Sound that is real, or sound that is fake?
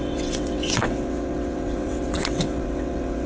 fake